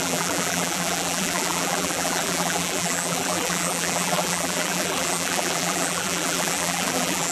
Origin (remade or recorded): remade